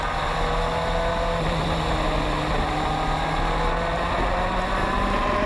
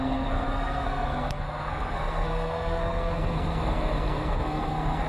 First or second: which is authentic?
first